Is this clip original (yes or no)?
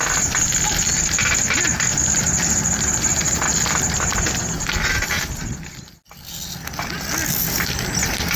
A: yes